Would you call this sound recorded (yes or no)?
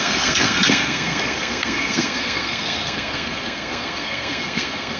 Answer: no